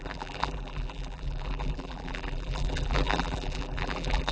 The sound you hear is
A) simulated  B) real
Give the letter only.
A